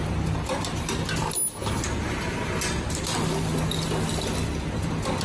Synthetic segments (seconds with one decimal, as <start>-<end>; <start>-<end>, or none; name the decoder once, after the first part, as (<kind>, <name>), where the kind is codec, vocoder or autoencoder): none